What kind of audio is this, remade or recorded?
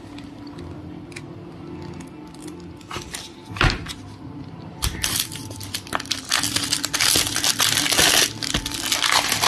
recorded